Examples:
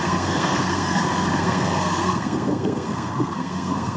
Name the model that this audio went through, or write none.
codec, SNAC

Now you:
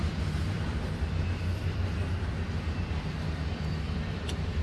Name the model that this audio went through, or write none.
vocoder, BigVGAN v2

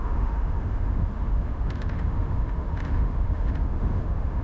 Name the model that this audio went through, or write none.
autoencoder, DAC-VAE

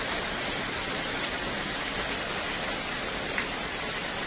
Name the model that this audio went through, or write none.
none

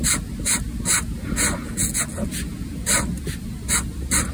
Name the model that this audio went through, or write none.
none